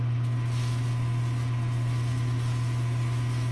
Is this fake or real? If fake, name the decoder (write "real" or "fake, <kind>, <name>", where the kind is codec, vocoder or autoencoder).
real